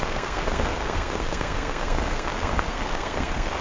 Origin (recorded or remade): remade